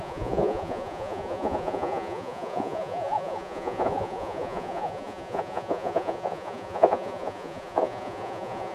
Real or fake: fake